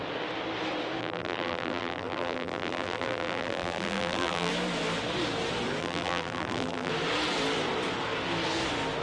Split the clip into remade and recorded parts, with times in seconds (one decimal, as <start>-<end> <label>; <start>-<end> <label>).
0.0-1.0 recorded; 1.0-4.5 remade; 4.5-5.8 recorded; 5.8-6.9 remade; 6.9-9.0 recorded